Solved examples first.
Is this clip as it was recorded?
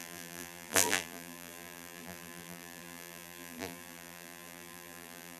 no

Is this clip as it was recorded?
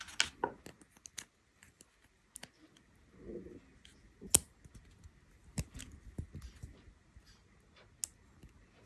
yes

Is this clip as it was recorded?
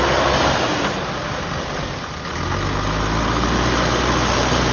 yes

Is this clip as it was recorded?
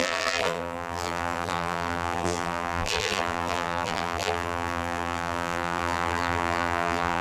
no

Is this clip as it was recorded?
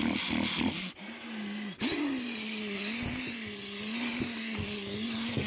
yes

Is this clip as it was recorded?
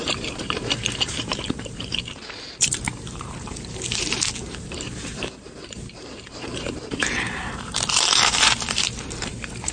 no